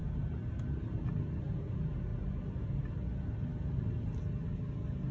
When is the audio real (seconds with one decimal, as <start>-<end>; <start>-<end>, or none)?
0.0-5.1